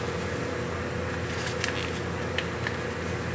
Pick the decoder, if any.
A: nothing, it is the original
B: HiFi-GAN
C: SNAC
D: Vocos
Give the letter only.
A